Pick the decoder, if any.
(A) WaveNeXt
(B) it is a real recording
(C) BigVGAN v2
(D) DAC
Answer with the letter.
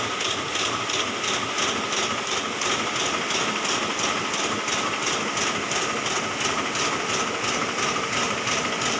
B